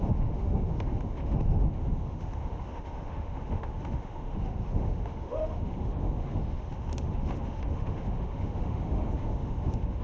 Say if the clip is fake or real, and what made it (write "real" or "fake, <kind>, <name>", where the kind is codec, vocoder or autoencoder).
fake, autoencoder, DAC-VAE